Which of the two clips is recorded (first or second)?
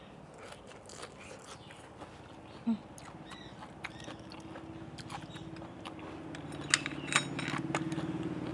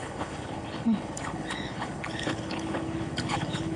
first